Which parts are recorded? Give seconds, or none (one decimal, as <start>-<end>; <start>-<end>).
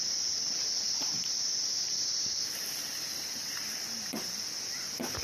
0.0-1.5; 4.6-5.2